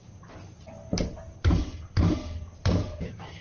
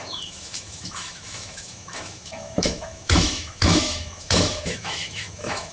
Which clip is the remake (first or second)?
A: second